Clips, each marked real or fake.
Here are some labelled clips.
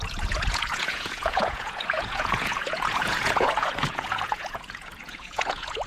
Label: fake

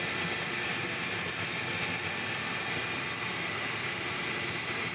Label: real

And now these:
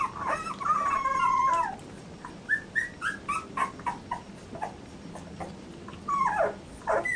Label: real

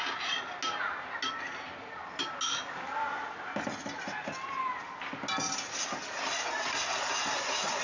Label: real